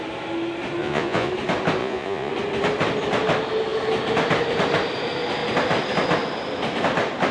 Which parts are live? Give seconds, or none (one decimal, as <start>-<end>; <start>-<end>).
0.0-0.8; 1.3-1.8; 2.3-7.3